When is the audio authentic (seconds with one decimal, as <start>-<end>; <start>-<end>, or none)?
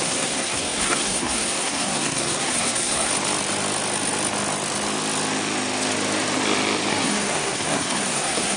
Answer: 3.1-6.9